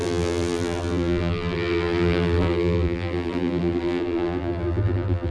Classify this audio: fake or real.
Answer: fake